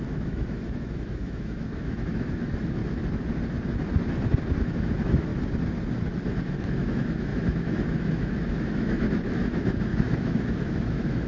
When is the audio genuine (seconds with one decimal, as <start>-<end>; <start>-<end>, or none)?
2.8-4.6; 5.3-6.4